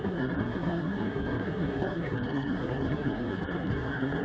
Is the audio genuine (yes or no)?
no